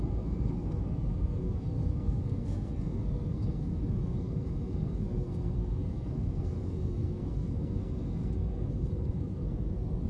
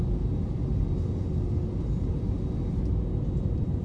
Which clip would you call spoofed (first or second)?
first